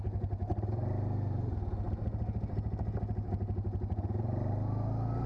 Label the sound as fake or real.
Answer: real